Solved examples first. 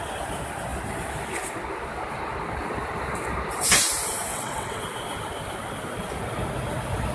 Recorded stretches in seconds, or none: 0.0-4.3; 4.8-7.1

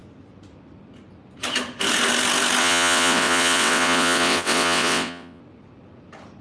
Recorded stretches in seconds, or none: 0.0-2.6; 5.4-6.4